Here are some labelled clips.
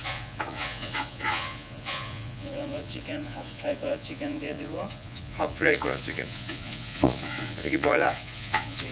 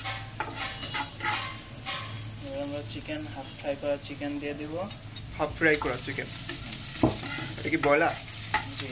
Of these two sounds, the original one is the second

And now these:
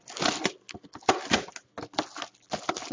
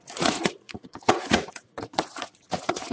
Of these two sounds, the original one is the first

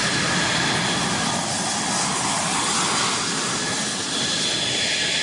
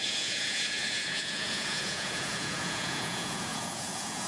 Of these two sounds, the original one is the first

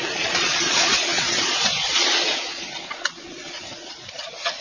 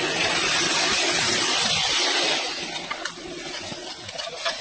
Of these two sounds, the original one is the second